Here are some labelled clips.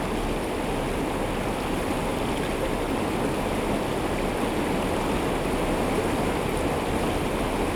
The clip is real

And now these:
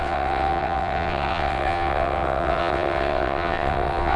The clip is fake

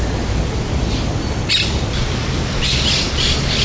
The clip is real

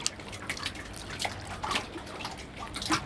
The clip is real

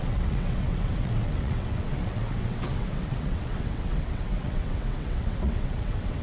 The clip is fake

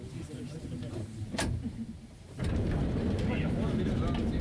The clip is real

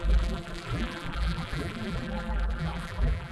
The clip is fake